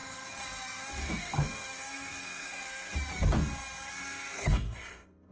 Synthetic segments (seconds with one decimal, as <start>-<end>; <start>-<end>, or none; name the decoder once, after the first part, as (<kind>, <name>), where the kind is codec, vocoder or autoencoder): 1.0-2.9 (codec, SNAC); 3.9-5.3